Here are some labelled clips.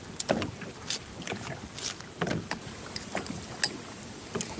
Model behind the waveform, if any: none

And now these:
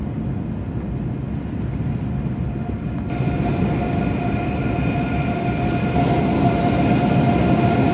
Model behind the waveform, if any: none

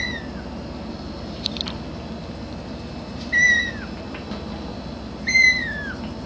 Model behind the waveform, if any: none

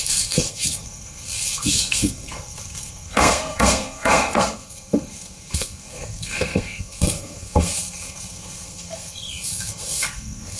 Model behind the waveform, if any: codec, SNAC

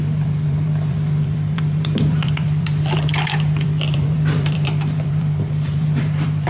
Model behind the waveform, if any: vocoder, BigVGAN v2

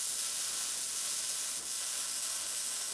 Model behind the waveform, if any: none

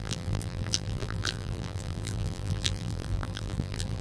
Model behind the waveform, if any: vocoder, BigVGAN v2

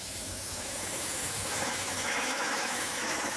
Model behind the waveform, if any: autoencoder, DAC-VAE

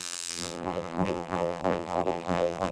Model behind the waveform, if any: vocoder, BigVGAN v2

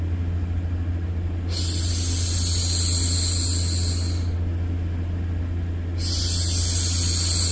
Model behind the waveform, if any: none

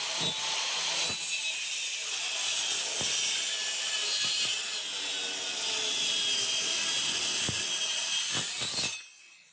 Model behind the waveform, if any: none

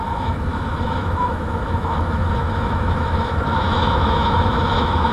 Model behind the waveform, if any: autoencoder, DAC-VAE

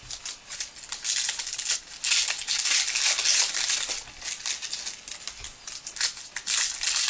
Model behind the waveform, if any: none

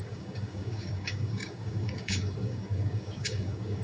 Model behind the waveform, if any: codec, DAC